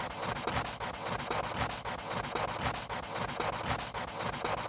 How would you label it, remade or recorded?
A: recorded